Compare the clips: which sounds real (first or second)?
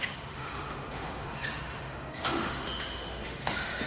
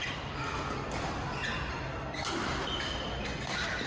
second